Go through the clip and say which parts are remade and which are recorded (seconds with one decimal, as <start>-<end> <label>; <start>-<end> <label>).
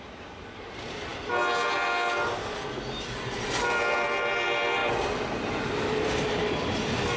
0.0-7.2 recorded